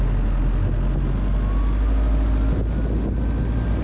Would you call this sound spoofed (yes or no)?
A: no